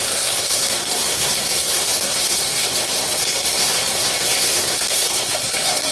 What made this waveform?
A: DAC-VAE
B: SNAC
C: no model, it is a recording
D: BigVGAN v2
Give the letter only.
B